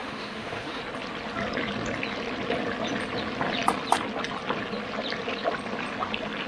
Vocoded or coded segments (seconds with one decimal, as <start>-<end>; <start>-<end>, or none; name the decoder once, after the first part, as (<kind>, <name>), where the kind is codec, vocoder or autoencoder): 0.0-0.8 (autoencoder, DAC-VAE)